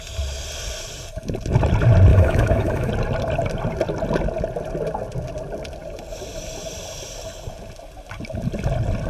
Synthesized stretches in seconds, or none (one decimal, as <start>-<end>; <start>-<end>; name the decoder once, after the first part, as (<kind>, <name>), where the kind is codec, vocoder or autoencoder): 2.1-2.9 (autoencoder, DAC-VAE)